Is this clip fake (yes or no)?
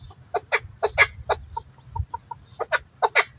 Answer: no